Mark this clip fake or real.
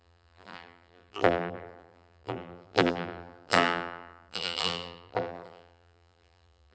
fake